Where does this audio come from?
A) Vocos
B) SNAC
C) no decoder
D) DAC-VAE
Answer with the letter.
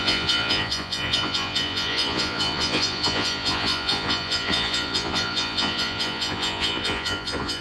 A